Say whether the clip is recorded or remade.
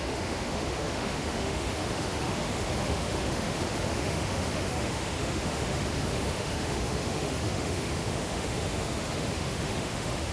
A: remade